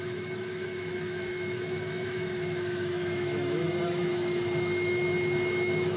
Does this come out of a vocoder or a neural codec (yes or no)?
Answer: yes